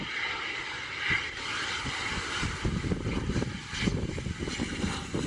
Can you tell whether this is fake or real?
real